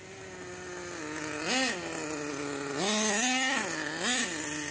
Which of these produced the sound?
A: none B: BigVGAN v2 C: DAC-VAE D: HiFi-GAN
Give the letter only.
A